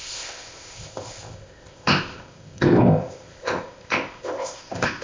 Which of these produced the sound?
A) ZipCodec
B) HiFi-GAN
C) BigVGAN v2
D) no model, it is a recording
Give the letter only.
A